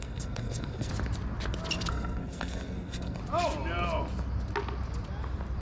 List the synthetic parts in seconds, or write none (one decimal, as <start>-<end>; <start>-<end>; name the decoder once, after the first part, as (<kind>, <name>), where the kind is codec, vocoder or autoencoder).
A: 0.0-0.9 (codec, SNAC); 1.9-3.2